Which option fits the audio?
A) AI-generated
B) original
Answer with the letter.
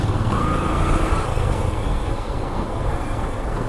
A